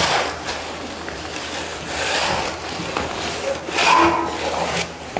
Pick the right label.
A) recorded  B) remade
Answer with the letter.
A